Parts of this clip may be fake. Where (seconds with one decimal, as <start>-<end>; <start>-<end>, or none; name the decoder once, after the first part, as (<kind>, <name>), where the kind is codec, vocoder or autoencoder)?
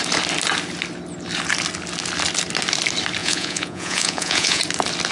3.2-4.6 (vocoder, Vocos)